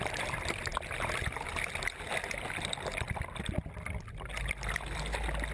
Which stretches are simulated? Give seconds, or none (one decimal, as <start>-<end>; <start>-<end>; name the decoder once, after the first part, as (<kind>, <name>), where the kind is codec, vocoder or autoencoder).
none